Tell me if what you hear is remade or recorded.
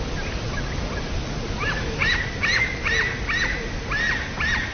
recorded